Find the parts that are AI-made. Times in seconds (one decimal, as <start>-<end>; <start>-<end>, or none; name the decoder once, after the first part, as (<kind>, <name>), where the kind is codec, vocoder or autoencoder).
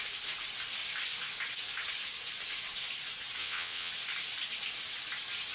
3.4-3.9 (vocoder, WaveNeXt)